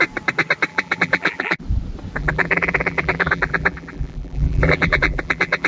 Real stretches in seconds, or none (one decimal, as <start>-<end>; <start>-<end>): 0.0-0.7; 1.6-2.2